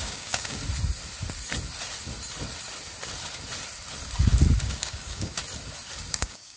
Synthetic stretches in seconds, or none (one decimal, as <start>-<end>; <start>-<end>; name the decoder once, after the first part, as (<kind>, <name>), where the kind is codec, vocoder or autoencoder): 0.0-0.6 (codec, DAC); 4.6-5.4; 6.1-6.6